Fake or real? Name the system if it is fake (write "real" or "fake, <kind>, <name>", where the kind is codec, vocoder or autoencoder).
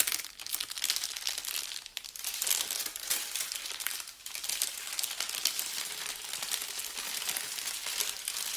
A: real